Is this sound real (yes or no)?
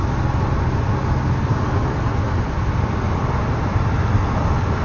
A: yes